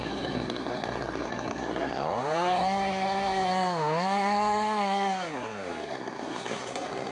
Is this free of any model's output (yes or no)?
no